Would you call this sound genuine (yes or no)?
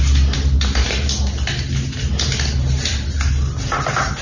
yes